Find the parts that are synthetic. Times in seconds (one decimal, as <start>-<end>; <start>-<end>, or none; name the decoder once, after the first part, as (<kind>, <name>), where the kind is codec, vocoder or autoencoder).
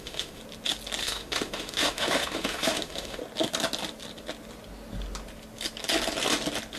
0.0-0.4 (autoencoder, DAC-VAE); 1.0-3.2